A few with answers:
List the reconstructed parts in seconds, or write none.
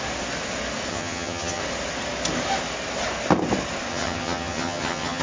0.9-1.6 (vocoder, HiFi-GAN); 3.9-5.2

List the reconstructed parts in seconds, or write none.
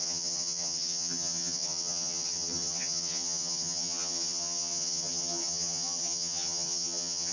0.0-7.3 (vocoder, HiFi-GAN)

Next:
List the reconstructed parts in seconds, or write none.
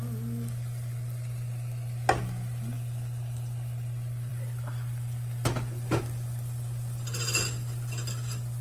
none